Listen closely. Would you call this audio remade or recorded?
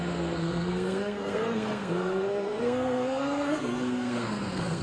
remade